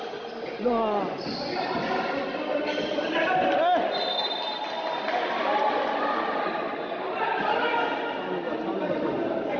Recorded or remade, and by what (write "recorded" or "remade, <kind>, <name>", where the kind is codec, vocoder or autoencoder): recorded